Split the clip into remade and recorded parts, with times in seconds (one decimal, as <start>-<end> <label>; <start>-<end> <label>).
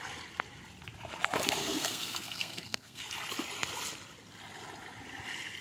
0.0-1.6 recorded; 1.6-3.1 remade; 3.1-5.6 recorded